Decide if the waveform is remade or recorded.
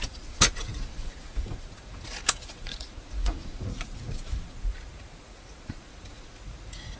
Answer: remade